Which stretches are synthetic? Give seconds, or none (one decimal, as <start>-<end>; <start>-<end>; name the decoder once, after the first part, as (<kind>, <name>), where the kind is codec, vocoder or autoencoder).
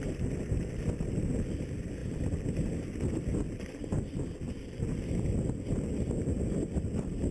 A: none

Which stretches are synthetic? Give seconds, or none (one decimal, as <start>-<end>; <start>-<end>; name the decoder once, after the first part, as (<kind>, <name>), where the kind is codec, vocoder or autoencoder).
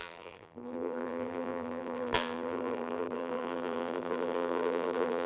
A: 0.0-5.3 (vocoder, BigVGAN v2)